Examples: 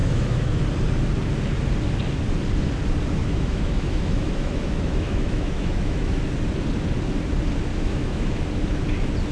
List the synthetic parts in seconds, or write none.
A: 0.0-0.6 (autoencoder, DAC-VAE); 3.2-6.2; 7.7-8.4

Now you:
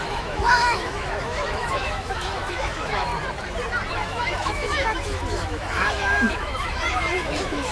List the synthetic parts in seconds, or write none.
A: 0.0-3.1 (autoencoder, DAC-VAE); 3.9-7.7

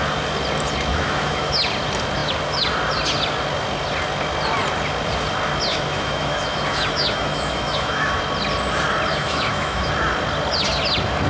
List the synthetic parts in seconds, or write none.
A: 0.9-1.5 (autoencoder, DAC-VAE); 5.7-8.2; 9.1-9.9